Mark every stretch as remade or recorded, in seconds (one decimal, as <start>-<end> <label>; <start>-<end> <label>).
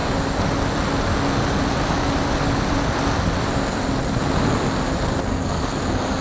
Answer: 0.0-5.3 recorded; 5.3-5.8 remade; 5.8-6.2 recorded